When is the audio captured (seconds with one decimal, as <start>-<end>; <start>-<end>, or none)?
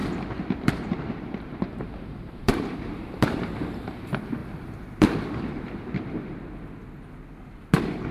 4.0-4.4; 6.4-8.1